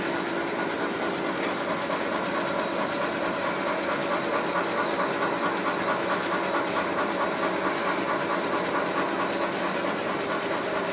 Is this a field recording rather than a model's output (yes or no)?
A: yes